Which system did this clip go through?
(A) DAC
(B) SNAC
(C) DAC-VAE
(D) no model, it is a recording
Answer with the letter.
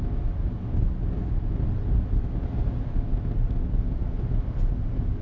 D